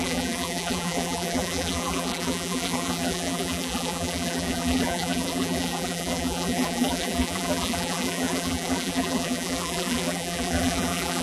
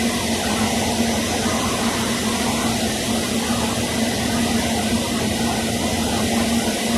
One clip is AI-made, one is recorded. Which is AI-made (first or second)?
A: first